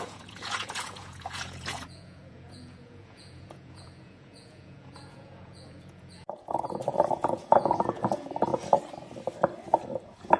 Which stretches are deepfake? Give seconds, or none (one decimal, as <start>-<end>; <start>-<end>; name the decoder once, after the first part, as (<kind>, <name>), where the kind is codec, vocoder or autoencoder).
0.0-8.5 (vocoder, Vocos); 10.0-10.4